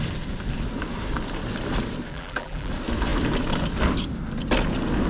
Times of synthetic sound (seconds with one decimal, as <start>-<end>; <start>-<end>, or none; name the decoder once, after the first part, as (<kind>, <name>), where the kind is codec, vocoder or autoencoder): 2.1-2.7 (vocoder, BigVGAN v2)